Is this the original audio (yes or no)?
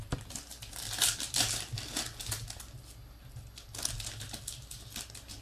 yes